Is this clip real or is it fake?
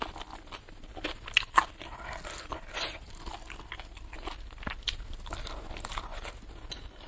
real